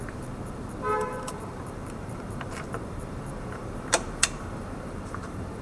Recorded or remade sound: remade